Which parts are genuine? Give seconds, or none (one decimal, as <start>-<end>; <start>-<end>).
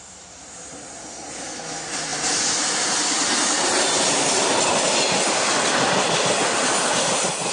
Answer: 0.0-7.5